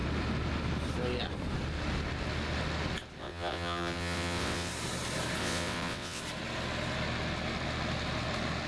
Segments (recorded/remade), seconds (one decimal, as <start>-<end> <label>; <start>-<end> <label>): 0.0-3.2 recorded; 3.2-4.7 remade; 4.7-5.4 recorded; 5.4-6.2 remade; 6.2-8.7 recorded